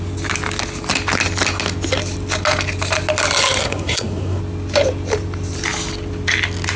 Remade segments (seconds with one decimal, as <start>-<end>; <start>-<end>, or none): 3.6-4.4